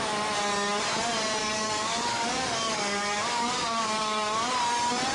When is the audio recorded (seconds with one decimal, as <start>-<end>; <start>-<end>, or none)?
0.0-1.4; 4.5-5.1

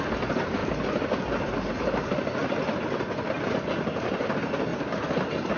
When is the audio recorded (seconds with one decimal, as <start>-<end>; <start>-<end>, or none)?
0.6-1.3; 2.4-3.7; 4.7-5.6

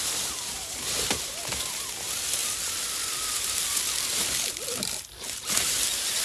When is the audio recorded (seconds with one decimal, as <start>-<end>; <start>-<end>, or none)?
2.4-6.2

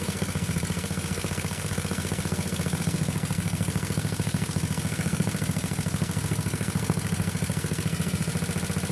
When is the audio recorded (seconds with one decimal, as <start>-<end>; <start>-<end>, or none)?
8.3-8.9

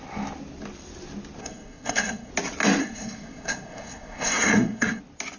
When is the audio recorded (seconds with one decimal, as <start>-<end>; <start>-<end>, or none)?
0.0-1.4; 2.3-2.8; 5.0-5.4

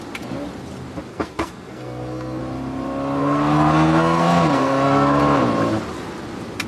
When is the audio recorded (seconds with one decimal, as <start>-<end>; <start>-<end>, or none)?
0.0-1.1; 2.4-3.2; 5.2-6.7

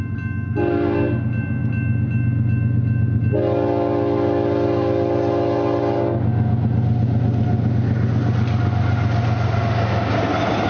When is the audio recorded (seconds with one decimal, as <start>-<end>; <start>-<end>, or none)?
0.0-10.7

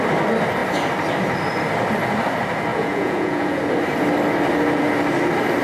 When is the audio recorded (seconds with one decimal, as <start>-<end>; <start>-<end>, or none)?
0.0-2.7; 3.6-5.6